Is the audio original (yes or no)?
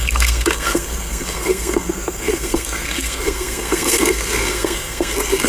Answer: no